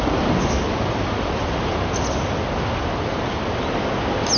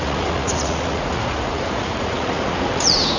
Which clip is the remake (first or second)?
second